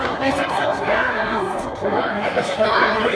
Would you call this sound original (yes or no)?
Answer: no